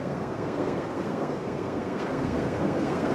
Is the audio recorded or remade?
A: remade